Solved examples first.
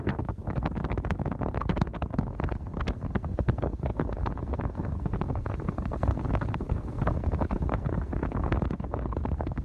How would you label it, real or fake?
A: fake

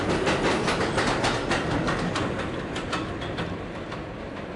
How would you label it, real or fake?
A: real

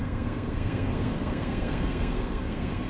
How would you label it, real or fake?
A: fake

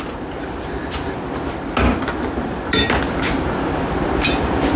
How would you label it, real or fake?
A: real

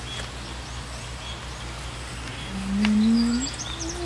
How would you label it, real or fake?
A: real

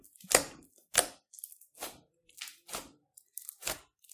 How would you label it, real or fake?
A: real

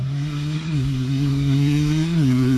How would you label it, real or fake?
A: fake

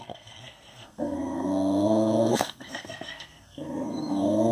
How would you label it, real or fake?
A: fake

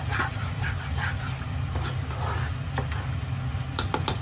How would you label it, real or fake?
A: real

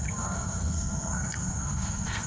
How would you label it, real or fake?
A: fake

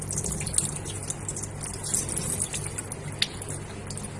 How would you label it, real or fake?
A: real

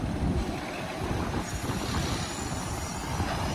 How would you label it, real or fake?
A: real